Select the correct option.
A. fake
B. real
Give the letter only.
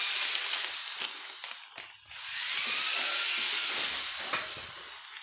B